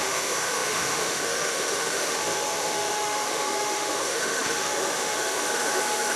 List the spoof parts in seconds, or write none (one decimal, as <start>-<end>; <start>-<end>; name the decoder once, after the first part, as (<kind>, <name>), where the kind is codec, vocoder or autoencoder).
0.0-6.2 (autoencoder, DAC-VAE)